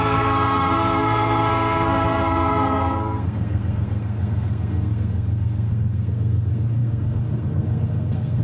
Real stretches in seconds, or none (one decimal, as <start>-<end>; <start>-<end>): none